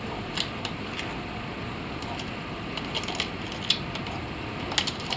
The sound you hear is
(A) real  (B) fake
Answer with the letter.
A